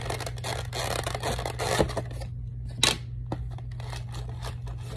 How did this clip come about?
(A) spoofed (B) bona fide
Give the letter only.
B